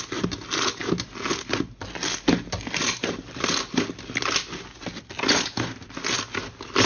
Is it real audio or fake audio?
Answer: real